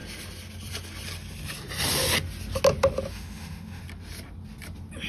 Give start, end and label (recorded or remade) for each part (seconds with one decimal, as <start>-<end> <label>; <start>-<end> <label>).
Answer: 0.0-3.1 recorded; 3.1-3.8 remade; 3.8-5.1 recorded